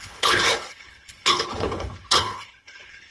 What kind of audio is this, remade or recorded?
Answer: remade